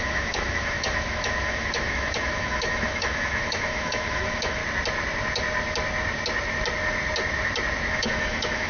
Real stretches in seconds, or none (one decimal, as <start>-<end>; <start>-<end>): 4.6-7.9